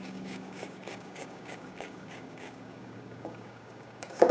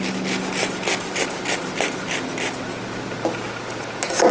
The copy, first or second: first